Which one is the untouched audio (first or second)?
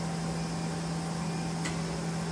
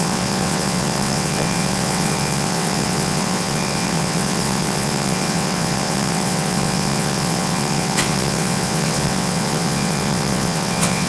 first